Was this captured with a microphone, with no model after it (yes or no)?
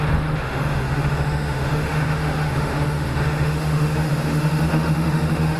no